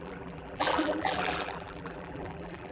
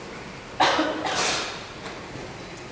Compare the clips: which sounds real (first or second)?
second